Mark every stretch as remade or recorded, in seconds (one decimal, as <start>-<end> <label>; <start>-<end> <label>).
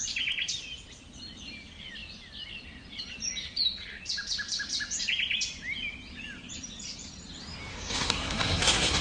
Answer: 0.0-7.7 recorded; 7.7-9.0 remade